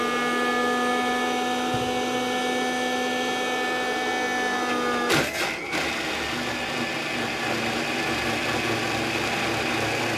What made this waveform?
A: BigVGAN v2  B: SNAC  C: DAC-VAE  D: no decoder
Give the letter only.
D